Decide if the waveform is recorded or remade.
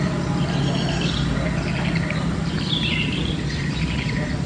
recorded